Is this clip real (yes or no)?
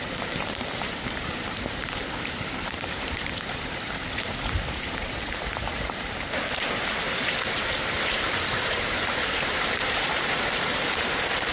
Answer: no